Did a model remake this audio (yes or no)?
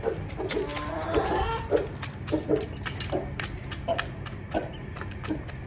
no